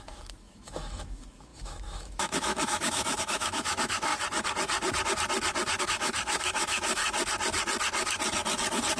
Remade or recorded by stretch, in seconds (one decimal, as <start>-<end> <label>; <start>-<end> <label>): 0.0-4.1 remade; 4.1-5.8 recorded; 5.8-7.0 remade; 7.0-9.0 recorded